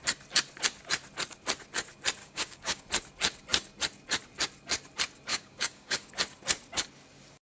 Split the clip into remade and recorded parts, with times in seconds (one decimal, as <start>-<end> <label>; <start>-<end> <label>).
0.0-2.2 recorded; 2.2-2.8 remade; 2.8-5.3 recorded; 5.3-6.1 remade; 6.1-7.6 recorded

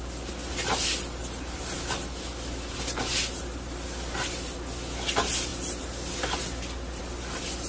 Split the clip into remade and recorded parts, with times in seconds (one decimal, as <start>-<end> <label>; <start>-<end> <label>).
0.0-7.7 recorded

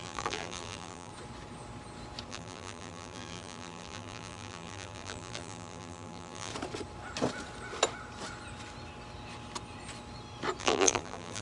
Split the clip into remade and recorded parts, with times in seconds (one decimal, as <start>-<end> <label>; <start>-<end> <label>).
0.0-1.1 remade; 1.1-2.3 recorded; 2.3-6.5 remade; 6.5-10.6 recorded; 10.6-11.4 remade

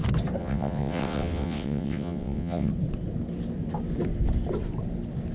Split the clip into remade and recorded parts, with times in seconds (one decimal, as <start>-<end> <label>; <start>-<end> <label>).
0.0-0.4 recorded; 0.4-2.7 remade; 2.7-5.3 recorded

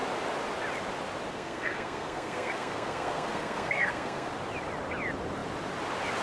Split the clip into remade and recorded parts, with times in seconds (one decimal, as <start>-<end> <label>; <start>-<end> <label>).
0.0-1.3 recorded; 1.3-4.3 remade; 4.3-6.2 recorded

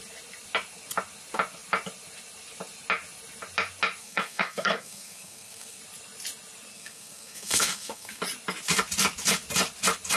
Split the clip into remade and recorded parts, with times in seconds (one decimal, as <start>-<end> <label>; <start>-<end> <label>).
0.0-4.0 recorded; 4.0-5.8 remade; 5.8-6.7 recorded; 6.7-8.2 remade; 8.2-10.2 recorded

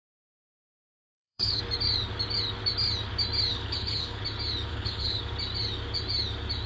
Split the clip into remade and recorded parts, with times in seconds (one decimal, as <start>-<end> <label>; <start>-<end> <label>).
0.0-1.1 recorded; 1.1-1.6 remade; 1.6-3.5 recorded; 3.5-4.2 remade; 4.2-4.7 recorded; 4.7-5.2 remade; 5.2-6.7 recorded